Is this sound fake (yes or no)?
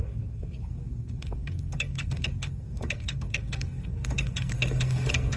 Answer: yes